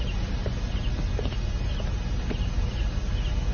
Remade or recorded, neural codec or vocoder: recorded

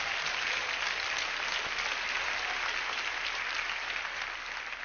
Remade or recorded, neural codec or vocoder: recorded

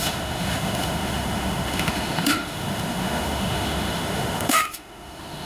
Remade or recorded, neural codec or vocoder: remade, autoencoder, DAC-VAE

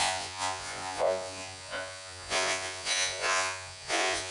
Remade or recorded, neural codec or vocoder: remade, vocoder, Vocos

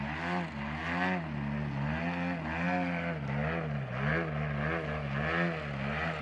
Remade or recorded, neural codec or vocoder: recorded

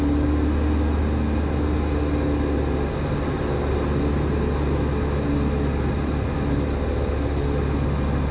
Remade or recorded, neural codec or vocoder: recorded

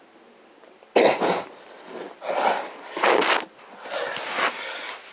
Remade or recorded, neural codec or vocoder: recorded